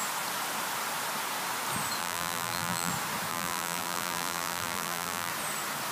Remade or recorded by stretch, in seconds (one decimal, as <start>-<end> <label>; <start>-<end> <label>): 0.0-2.0 recorded; 2.0-2.9 remade; 2.9-3.3 recorded; 3.3-5.3 remade; 5.3-5.9 recorded